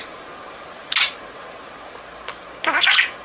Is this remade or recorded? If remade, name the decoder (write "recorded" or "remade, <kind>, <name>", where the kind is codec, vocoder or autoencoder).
recorded